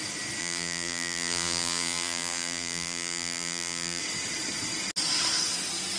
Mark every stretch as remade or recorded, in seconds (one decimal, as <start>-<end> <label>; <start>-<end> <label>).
0.0-0.4 recorded; 0.4-4.0 remade; 4.0-6.0 recorded